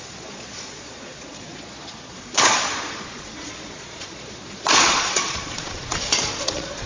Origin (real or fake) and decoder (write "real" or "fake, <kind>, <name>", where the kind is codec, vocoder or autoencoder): fake, vocoder, Vocos